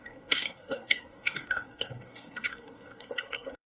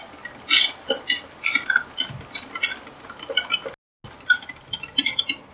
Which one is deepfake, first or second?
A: first